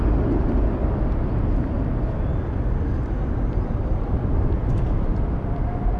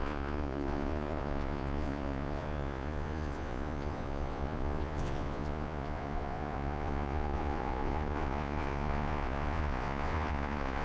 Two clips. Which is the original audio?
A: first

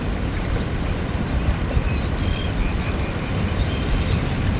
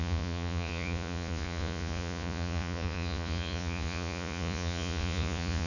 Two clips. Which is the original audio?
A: first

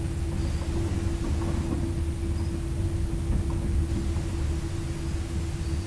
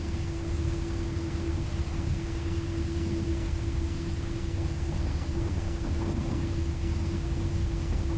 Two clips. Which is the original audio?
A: first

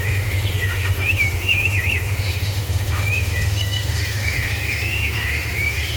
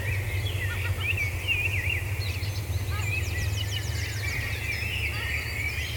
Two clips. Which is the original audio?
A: second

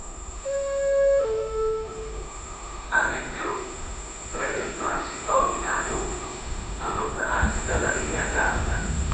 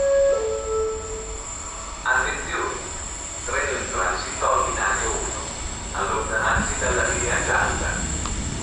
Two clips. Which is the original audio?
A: second